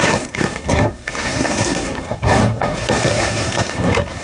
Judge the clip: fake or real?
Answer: fake